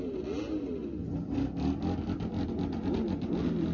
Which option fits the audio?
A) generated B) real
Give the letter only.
B